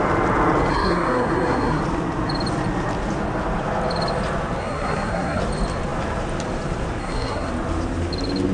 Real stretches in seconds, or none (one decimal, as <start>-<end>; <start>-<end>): 0.0-0.7; 1.8-4.6; 5.4-7.0; 7.5-8.5